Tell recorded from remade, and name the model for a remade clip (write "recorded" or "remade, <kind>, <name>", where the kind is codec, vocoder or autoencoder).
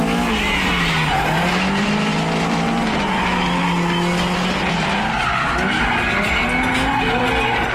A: recorded